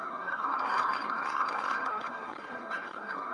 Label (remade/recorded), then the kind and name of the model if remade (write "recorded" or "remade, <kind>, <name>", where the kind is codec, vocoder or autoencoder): remade, codec, SNAC